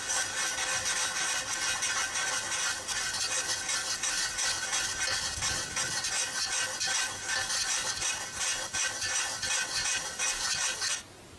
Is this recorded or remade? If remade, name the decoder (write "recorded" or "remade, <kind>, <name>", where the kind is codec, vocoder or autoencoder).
recorded